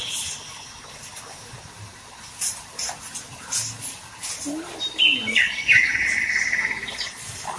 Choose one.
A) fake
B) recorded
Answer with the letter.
B